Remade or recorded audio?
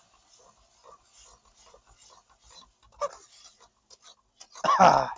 recorded